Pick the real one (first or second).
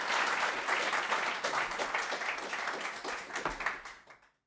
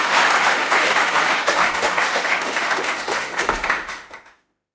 first